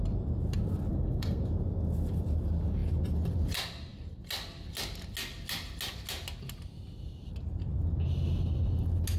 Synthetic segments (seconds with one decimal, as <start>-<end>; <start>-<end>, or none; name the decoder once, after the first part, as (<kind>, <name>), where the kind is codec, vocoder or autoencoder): 0.9-1.4 (codec, SNAC)